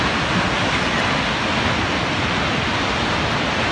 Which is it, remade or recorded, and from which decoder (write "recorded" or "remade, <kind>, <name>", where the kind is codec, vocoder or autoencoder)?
recorded